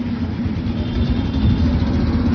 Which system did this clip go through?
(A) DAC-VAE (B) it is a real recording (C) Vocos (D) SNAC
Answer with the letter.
B